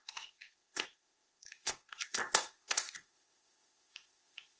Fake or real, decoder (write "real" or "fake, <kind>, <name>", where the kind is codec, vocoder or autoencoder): fake, codec, ZipCodec